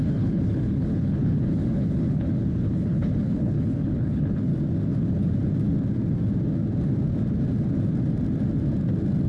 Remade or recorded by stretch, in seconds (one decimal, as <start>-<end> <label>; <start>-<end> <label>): 0.0-4.5 remade; 4.5-9.3 recorded